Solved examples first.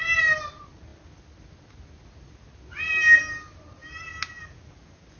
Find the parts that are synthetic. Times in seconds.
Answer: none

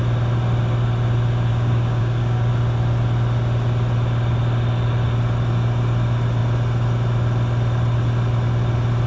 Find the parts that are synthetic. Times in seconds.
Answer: 1.5-2.5 (codec, DAC)

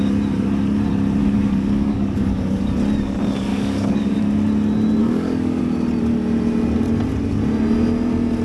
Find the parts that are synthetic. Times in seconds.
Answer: 1.2-2.6 (codec, DAC); 3.5-4.2; 5.0-5.6

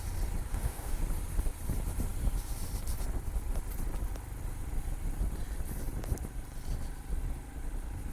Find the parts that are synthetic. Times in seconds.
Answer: 0.5-1.0 (codec, DAC)

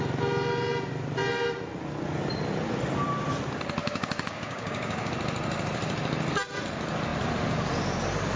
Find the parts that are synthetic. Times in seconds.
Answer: 3.8-5.1 (codec, DAC)

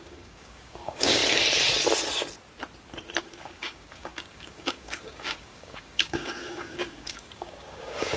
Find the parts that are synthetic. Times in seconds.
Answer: 0.0-1.2 (codec, DAC); 3.2-8.2

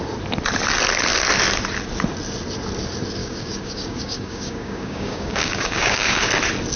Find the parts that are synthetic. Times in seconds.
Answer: 3.2-6.3 (codec, DAC)